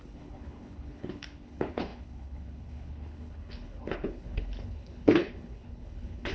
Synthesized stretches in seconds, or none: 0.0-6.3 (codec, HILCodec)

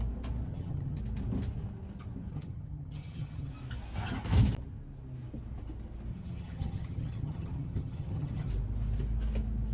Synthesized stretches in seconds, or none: 0.5-1.0 (vocoder, HiFi-GAN); 2.3-3.5; 6.1-8.5

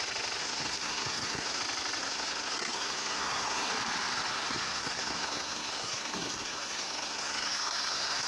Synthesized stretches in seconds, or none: 0.4-1.6 (codec, SNAC); 2.0-3.7; 4.3-8.3

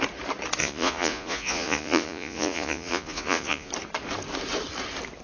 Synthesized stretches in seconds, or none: 0.6-3.7 (vocoder, Vocos)

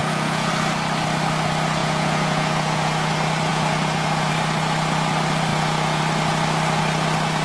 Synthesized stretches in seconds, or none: 0.0-0.5 (vocoder, Vocos); 1.8-3.1; 3.5-4.3; 5.5-6.0

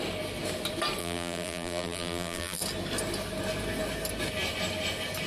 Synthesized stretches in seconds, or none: 1.0-2.6 (vocoder, BigVGAN v2)

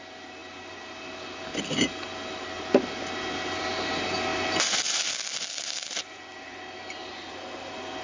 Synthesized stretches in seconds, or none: none

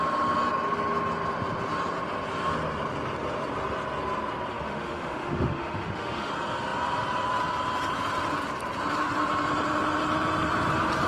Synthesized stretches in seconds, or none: 4.5-6.3 (autoencoder, DAC-VAE)